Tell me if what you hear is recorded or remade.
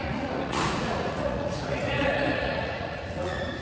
remade